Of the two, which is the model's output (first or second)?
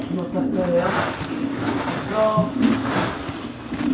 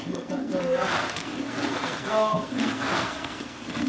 second